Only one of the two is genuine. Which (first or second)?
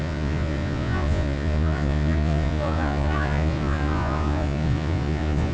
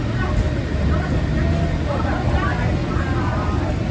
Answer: second